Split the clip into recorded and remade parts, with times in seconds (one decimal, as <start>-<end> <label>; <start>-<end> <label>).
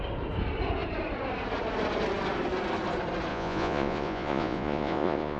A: 0.0-3.3 recorded; 3.3-5.4 remade